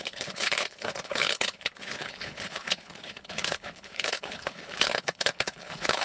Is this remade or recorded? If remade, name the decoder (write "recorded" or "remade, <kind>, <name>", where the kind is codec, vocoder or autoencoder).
remade, codec, HILCodec